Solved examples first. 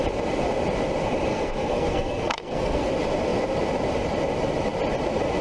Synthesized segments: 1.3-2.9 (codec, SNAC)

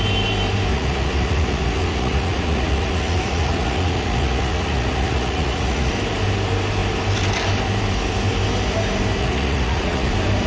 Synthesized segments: 0.7-5.9 (vocoder, Vocos); 9.2-10.1

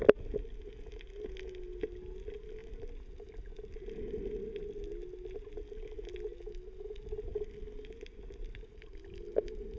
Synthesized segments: 2.6-3.3 (vocoder, BigVGAN v2)